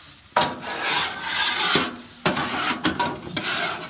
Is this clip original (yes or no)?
yes